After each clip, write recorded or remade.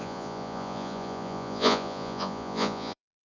remade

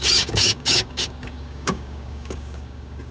remade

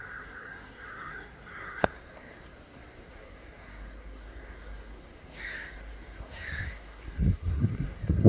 remade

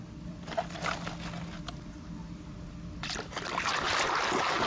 recorded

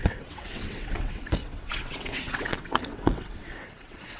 remade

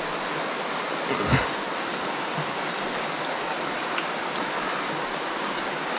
recorded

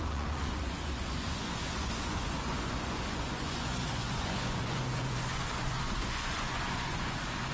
remade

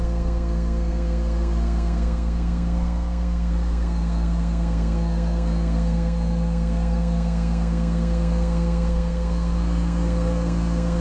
remade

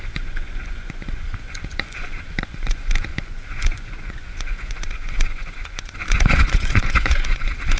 remade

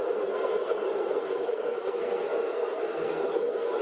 remade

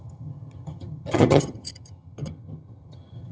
remade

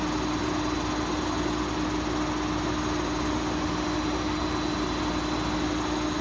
recorded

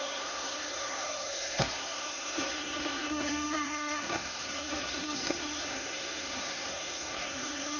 remade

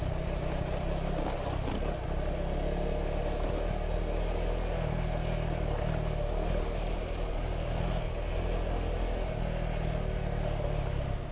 recorded